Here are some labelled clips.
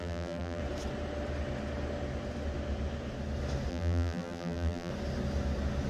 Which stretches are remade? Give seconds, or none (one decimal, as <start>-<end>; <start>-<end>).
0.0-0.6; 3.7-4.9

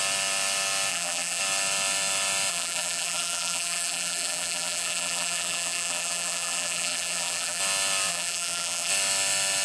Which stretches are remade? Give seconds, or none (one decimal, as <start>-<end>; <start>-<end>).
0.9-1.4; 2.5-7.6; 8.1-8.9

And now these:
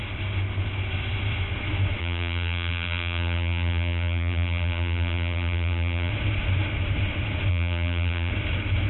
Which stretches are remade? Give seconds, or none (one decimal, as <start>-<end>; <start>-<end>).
2.0-6.1; 7.5-8.3

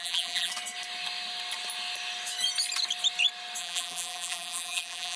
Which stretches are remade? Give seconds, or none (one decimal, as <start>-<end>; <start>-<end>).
0.0-0.5; 3.6-5.2

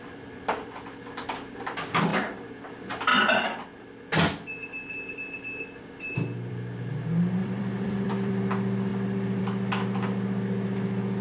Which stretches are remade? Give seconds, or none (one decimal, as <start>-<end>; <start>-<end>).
7.4-8.3

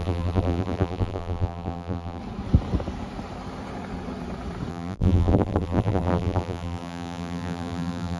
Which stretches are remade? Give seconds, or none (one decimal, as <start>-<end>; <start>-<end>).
0.0-2.2; 4.7-8.2